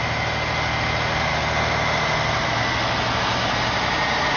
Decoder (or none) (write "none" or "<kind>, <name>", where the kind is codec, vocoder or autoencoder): none